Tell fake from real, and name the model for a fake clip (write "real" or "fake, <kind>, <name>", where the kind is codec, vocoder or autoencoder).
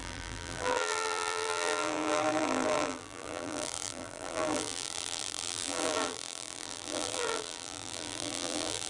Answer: fake, vocoder, BigVGAN v2